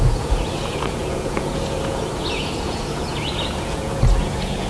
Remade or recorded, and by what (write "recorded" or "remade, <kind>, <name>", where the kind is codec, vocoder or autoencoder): remade, vocoder, Vocos